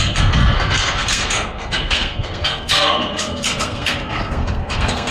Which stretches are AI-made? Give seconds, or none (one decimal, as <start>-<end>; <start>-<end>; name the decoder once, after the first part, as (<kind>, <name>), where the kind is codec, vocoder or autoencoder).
0.0-5.1 (codec, SNAC)